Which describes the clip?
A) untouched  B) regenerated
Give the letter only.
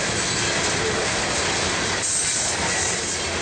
A